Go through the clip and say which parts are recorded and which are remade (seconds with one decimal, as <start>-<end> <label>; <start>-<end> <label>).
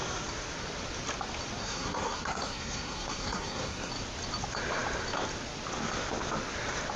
0.0-1.6 recorded; 1.6-3.9 remade; 3.9-7.0 recorded